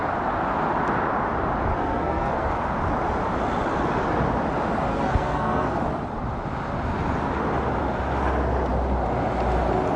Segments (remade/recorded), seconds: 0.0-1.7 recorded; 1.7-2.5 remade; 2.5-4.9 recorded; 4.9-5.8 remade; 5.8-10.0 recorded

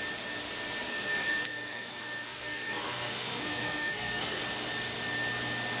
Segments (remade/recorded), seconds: 0.0-0.9 recorded; 0.9-4.4 remade; 4.4-5.8 recorded

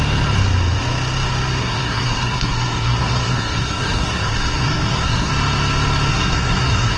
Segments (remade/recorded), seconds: 0.0-1.6 recorded; 1.6-5.3 remade; 5.3-6.1 recorded; 6.1-7.0 remade

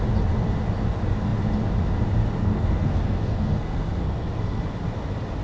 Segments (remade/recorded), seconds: 0.0-2.4 recorded; 2.4-4.6 remade; 4.6-5.4 recorded

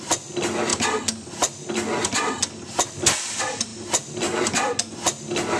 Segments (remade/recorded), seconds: 0.0-5.6 recorded

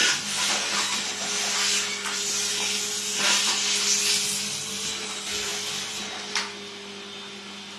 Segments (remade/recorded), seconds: 0.0-7.8 recorded

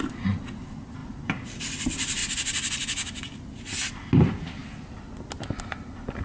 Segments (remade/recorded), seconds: 0.0-6.2 recorded